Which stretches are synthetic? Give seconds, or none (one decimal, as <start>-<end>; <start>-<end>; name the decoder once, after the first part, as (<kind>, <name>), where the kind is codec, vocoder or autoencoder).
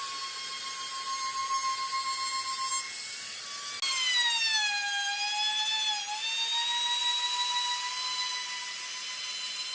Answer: none